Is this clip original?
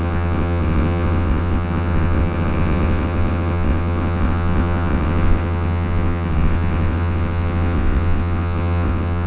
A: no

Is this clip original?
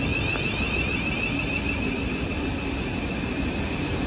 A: yes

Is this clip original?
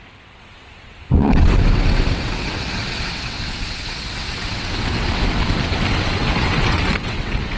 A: no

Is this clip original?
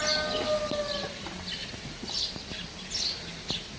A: yes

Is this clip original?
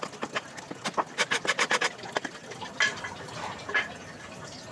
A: yes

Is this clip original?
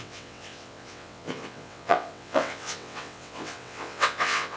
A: no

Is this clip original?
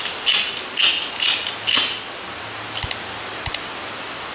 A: yes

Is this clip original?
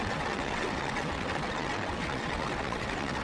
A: no